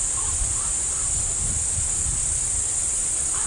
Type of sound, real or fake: real